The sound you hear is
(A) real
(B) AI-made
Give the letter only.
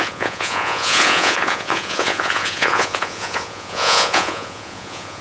B